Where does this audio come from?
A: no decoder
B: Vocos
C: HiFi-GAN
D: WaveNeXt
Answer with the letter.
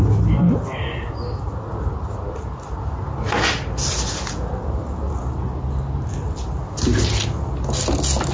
A